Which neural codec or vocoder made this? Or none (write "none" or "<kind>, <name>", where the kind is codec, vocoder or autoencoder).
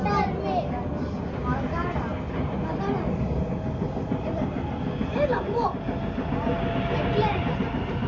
none